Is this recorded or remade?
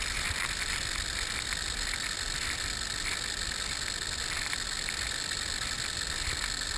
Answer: recorded